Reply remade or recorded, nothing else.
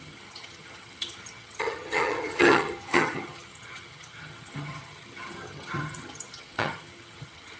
remade